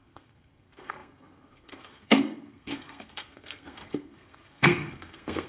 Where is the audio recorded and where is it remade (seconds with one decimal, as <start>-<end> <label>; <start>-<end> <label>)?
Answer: 0.0-5.5 remade